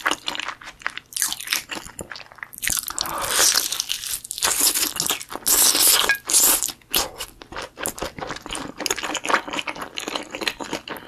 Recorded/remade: recorded